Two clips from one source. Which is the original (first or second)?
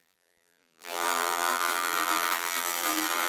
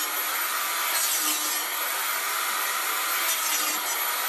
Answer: second